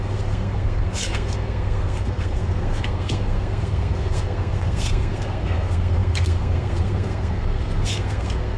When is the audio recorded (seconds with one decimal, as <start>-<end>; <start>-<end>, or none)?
none